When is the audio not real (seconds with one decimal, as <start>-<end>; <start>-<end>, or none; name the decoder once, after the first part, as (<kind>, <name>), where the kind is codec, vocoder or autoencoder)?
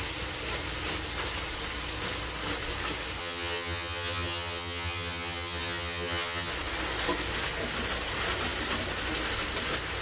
3.2-6.5 (vocoder, HiFi-GAN)